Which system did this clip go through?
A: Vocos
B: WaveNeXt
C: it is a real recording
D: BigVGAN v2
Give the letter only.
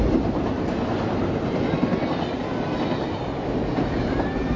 C